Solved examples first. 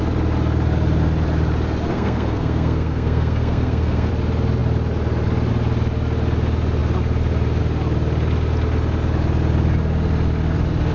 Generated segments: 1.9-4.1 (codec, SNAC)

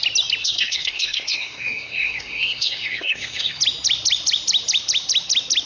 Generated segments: 0.4-3.6 (codec, SNAC)

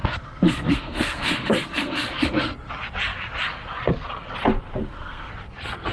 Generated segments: 0.0-2.5 (codec, SNAC); 4.8-5.3

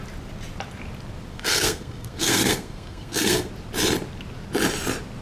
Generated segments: 1.3-3.5 (codec, SNAC)

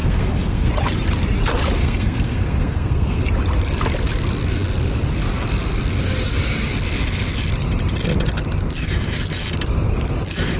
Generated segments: 0.0-0.7 (codec, SNAC); 1.8-3.2

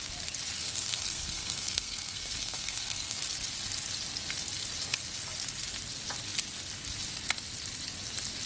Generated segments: 0.6-3.2 (codec, SNAC)